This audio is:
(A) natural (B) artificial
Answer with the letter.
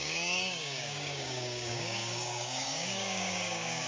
B